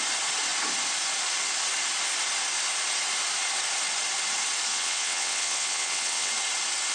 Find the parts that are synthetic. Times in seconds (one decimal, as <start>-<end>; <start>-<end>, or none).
4.7-6.3